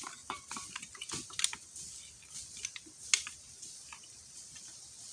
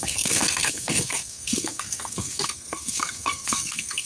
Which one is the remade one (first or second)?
second